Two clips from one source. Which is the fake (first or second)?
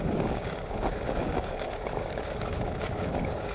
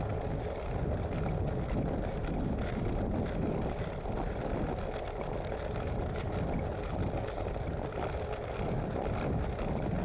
first